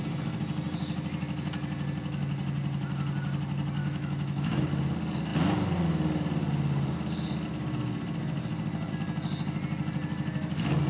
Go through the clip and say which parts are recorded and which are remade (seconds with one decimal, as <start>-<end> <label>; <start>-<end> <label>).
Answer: 0.0-3.8 recorded; 3.8-4.6 remade; 4.6-10.9 recorded